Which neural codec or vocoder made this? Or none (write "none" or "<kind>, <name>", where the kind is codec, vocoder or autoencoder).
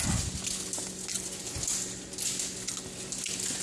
none